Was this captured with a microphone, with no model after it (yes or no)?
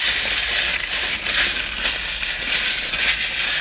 yes